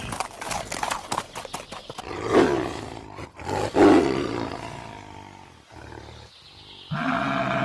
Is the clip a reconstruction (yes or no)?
no